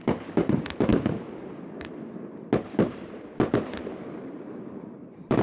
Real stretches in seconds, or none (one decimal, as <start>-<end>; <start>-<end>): 0.9-4.1